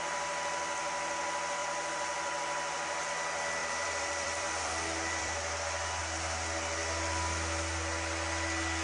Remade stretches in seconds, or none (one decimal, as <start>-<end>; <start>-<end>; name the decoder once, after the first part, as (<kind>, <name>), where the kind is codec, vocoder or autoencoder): 1.6-3.1 (vocoder, BigVGAN v2); 3.6-6.0